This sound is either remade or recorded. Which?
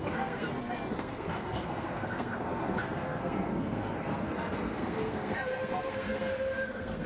remade